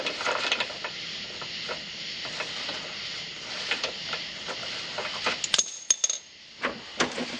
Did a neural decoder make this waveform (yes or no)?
no